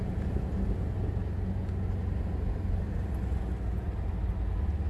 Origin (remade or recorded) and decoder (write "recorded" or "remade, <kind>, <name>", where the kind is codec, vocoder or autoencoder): recorded